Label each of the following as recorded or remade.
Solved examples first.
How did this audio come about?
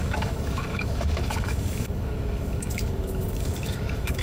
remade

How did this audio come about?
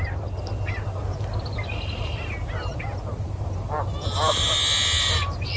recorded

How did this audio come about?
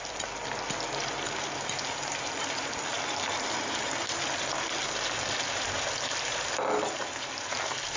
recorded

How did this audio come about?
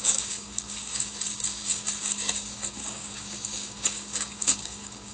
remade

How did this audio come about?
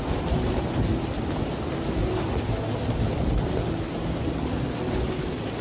recorded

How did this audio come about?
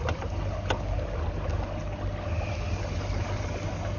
recorded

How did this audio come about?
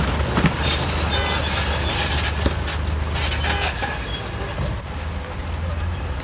recorded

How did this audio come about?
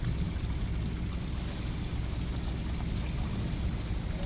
recorded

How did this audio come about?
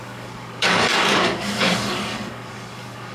remade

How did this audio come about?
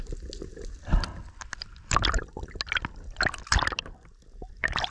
recorded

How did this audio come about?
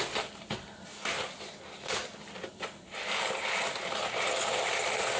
recorded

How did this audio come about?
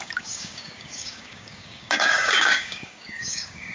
remade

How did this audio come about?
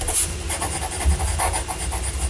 recorded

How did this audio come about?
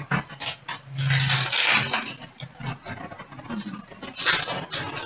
recorded